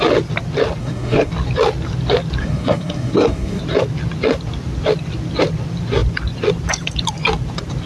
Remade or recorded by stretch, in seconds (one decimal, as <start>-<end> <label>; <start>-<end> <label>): 0.0-0.8 recorded; 0.8-1.3 remade; 1.3-2.4 recorded; 2.4-3.6 remade; 3.6-7.9 recorded